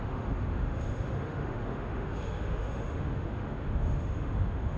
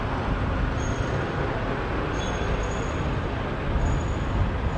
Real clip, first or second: second